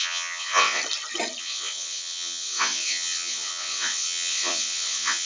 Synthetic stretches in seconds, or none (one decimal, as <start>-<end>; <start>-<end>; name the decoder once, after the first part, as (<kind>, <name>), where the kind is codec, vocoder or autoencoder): 0.0-0.8 (vocoder, WaveNeXt); 1.4-5.3